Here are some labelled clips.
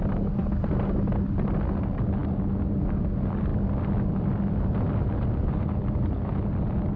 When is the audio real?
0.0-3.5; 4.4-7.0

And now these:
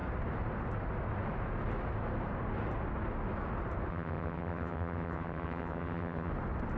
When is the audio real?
0.0-3.9; 6.3-6.8